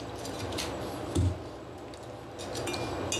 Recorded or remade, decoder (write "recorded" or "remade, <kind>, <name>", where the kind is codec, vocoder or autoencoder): recorded